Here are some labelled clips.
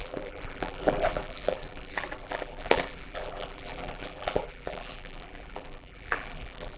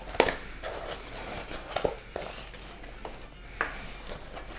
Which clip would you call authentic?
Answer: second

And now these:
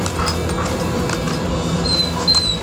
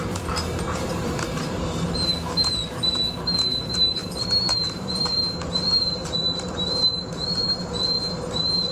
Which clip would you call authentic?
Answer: first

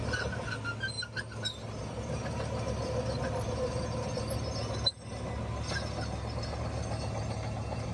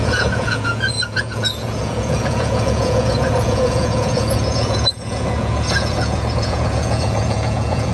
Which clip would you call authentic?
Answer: first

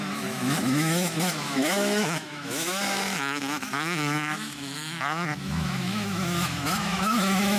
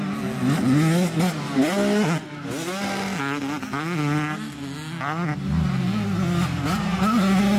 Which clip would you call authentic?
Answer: second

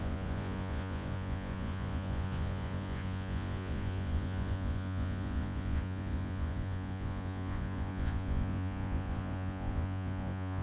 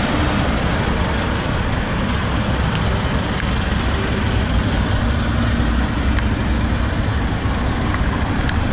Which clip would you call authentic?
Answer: second